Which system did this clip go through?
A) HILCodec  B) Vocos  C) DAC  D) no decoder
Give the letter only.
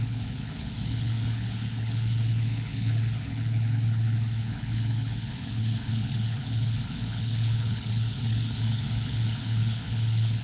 A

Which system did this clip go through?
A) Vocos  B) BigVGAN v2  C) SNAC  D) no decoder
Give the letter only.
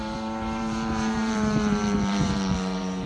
B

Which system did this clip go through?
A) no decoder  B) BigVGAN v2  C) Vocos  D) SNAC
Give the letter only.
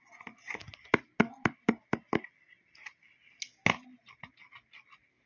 A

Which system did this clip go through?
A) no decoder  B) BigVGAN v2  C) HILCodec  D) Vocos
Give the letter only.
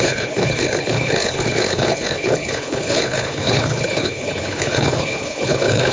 C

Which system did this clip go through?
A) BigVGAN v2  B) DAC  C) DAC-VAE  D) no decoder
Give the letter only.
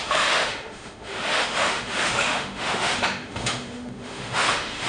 C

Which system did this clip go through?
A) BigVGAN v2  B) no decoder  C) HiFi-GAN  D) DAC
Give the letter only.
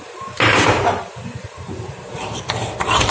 A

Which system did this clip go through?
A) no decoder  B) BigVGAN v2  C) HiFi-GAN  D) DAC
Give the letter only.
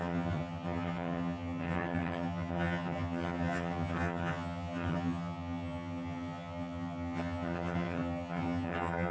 C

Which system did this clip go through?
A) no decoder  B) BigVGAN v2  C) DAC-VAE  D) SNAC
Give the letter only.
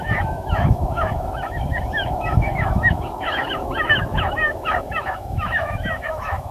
C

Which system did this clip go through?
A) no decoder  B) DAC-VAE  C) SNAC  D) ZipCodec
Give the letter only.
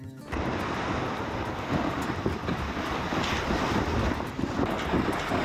A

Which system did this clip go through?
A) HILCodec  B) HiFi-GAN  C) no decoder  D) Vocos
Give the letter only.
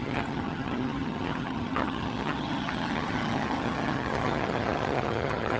B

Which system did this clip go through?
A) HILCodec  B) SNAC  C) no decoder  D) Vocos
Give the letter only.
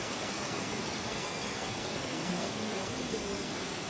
B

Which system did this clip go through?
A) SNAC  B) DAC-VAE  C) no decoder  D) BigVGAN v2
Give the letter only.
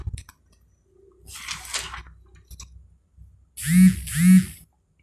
C